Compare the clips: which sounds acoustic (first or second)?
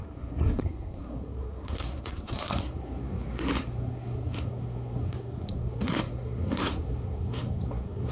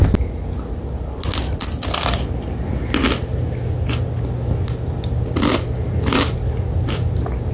second